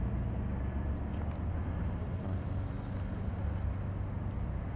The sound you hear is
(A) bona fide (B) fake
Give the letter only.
A